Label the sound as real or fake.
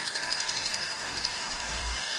fake